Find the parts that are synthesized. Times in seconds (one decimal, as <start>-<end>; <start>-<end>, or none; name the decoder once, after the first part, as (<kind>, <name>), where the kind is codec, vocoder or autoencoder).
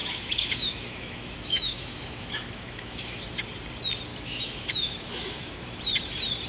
0.0-3.2 (autoencoder, DAC-VAE); 4.1-5.8